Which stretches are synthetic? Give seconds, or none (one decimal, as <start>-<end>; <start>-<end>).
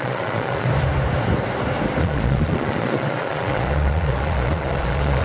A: 0.0-0.7; 2.0-5.2